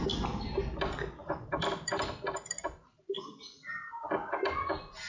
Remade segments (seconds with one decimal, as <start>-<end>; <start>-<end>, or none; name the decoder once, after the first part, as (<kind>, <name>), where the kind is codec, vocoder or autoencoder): 1.2-3.3 (vocoder, BigVGAN v2)